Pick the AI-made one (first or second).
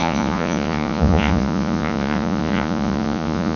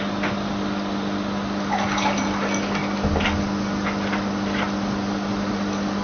first